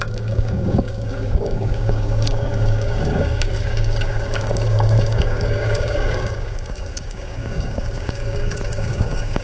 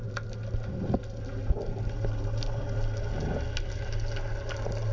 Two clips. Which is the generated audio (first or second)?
first